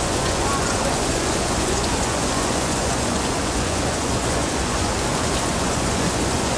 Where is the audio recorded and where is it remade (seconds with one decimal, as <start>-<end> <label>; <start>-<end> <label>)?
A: 0.0-6.6 remade